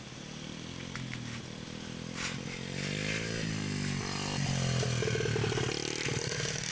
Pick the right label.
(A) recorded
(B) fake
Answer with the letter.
A